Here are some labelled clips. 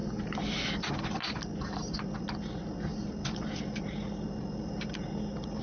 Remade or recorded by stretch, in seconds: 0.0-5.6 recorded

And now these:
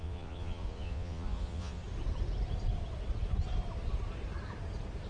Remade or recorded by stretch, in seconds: 0.0-1.8 remade; 1.8-5.1 recorded

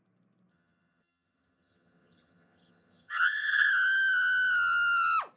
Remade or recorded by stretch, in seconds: 0.0-0.5 recorded; 0.5-3.7 remade; 3.7-5.4 recorded

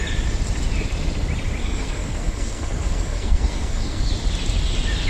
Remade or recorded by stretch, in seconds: 0.0-1.6 recorded; 1.6-4.1 remade; 4.1-5.1 recorded

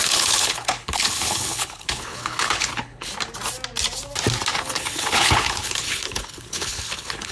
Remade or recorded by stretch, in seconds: 0.0-3.1 remade; 3.1-4.5 recorded; 4.5-7.3 remade